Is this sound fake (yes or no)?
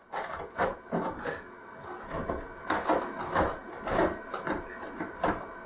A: no